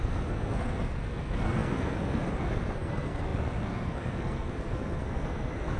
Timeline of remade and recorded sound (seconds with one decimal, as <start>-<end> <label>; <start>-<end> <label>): 0.0-5.8 remade